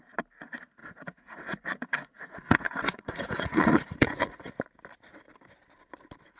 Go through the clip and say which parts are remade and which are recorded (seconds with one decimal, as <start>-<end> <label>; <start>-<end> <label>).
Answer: 0.0-0.8 recorded; 0.8-4.5 remade; 4.5-6.4 recorded